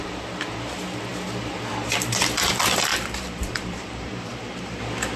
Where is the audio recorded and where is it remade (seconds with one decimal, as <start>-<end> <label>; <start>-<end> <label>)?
0.0-2.9 recorded; 2.9-4.8 remade; 4.8-5.2 recorded